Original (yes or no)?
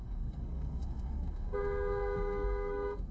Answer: no